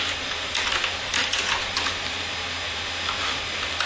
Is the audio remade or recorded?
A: recorded